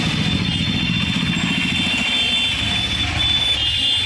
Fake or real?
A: real